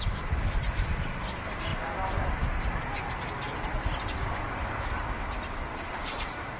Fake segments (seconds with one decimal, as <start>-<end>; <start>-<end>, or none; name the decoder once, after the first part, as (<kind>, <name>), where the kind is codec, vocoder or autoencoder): none